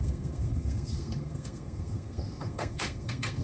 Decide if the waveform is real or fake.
fake